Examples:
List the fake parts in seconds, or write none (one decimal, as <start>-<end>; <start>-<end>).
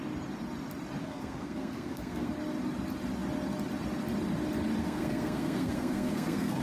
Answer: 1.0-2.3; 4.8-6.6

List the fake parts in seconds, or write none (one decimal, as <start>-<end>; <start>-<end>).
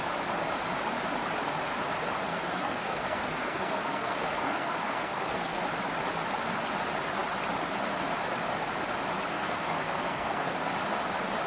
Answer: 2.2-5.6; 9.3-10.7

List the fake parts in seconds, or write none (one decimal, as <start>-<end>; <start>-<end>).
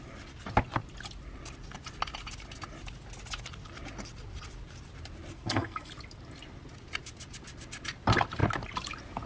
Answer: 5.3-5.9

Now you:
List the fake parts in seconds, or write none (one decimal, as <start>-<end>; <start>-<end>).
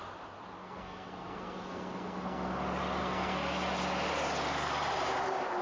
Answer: 0.6-2.5; 3.0-3.7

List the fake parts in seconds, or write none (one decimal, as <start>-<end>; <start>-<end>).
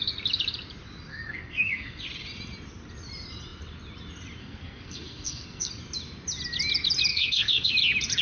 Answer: 1.1-2.0; 4.4-5.7; 7.1-7.7